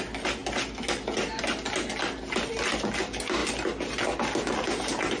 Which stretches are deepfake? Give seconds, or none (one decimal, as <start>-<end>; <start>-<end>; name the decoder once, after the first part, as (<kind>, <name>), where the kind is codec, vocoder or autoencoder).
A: none